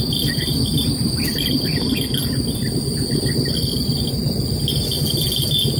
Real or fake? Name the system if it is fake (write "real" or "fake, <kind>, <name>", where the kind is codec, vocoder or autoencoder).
real